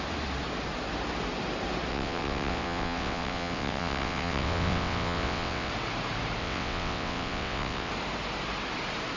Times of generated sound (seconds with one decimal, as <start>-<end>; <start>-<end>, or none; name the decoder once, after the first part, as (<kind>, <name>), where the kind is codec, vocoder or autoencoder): 1.9-5.7 (vocoder, WaveNeXt); 6.4-7.9